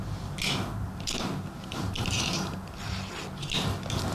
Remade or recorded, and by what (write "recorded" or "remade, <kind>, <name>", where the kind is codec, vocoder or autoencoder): recorded